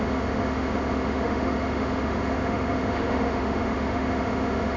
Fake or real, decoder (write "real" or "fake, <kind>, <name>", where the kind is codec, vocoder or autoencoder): fake, autoencoder, DAC-VAE